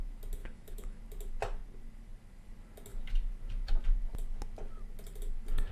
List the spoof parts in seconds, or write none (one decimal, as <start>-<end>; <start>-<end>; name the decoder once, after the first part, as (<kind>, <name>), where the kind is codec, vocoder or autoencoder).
0.4-1.0 (autoencoder, DAC-VAE)